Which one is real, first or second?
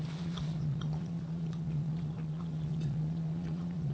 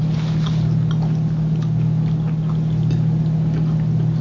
second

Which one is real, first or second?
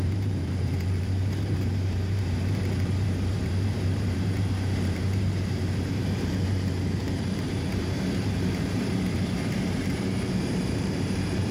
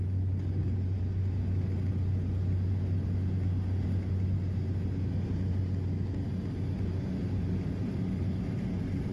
second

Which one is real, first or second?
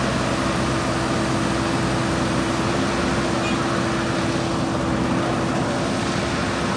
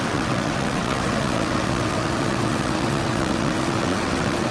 first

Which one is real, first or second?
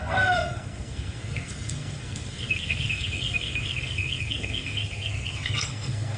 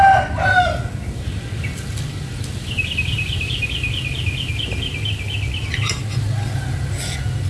second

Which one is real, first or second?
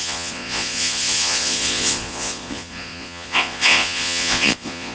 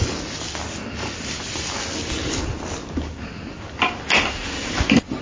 second